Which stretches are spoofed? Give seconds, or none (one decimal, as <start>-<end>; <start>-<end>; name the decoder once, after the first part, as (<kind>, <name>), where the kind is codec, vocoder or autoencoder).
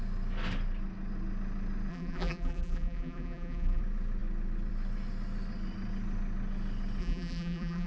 1.9-3.8 (vocoder, BigVGAN v2); 7.0-7.9